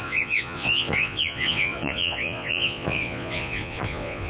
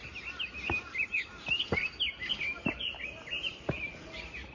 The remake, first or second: first